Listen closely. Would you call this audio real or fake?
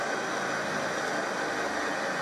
real